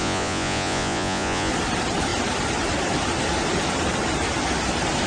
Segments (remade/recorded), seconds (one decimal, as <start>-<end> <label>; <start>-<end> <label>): 0.0-1.5 remade; 1.5-5.1 recorded